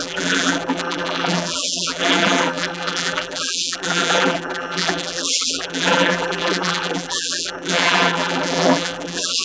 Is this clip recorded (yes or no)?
no